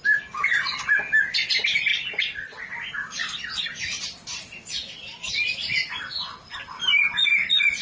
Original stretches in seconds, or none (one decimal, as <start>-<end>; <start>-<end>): 0.0-7.8